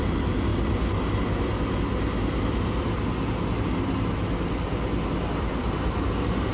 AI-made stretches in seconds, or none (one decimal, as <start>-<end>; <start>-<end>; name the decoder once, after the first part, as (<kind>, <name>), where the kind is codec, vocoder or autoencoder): none